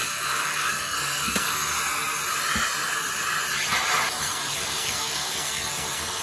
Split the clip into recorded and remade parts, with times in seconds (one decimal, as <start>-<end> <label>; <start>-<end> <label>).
0.0-1.7 remade; 1.7-4.2 recorded; 4.2-6.2 remade